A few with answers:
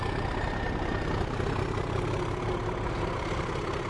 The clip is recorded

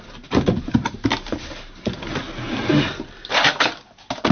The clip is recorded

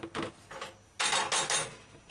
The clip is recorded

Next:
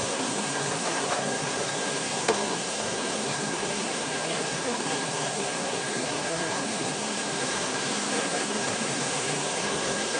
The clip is remade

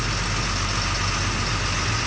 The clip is recorded